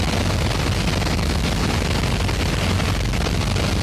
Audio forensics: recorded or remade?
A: recorded